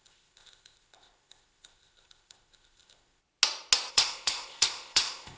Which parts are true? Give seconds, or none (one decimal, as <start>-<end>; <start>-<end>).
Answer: 3.2-3.9